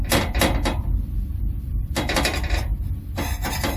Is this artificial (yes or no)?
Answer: yes